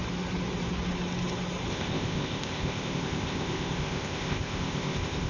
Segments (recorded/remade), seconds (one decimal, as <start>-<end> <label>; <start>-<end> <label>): 0.0-1.7 recorded; 1.7-5.3 remade